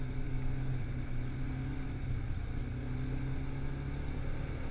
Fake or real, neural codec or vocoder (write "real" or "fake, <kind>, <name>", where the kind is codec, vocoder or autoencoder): real